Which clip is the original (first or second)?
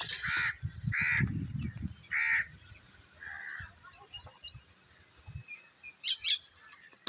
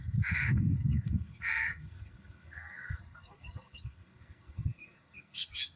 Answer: first